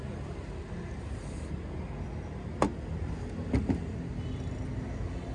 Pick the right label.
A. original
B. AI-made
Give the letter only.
A